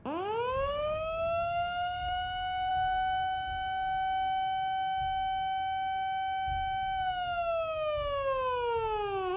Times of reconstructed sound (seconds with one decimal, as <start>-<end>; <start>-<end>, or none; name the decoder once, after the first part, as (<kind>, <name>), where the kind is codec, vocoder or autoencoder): 0.0-2.7 (codec, DAC)